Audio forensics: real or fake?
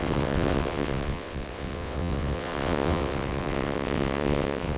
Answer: fake